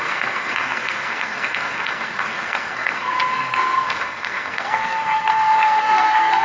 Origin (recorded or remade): remade